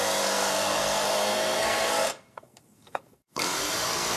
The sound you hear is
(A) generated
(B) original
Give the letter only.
A